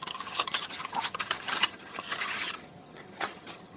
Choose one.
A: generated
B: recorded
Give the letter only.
A